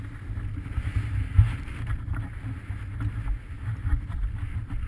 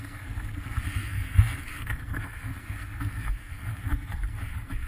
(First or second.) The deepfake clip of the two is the second